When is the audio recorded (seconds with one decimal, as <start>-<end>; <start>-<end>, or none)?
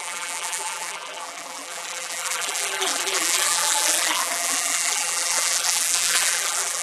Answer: none